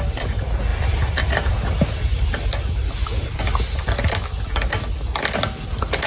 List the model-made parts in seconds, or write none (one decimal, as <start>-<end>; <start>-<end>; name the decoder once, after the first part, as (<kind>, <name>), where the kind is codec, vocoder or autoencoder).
none